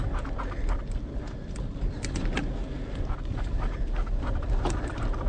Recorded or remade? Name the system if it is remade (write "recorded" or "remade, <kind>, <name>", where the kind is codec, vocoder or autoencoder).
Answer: recorded